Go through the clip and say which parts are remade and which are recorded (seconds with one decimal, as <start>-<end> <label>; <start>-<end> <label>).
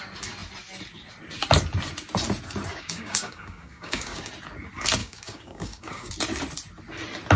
0.0-2.7 recorded; 2.7-4.3 remade; 4.3-5.0 recorded; 5.0-6.1 remade; 6.1-7.4 recorded